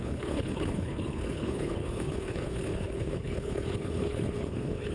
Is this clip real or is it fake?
fake